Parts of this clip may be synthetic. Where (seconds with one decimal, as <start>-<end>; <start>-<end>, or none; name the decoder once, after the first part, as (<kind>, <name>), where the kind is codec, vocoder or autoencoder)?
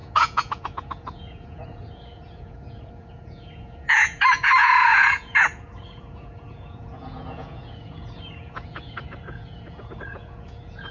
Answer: 0.0-10.9 (vocoder, Vocos)